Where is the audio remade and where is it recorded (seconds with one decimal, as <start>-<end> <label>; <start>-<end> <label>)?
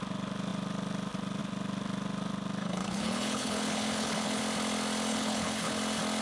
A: 0.0-2.6 recorded; 2.6-4.4 remade; 4.4-5.1 recorded; 5.1-5.8 remade; 5.8-6.2 recorded